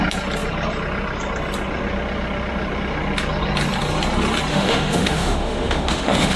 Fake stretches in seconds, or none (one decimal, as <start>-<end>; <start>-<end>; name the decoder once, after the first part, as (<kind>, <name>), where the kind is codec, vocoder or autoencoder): 4.5-6.4 (autoencoder, DAC-VAE)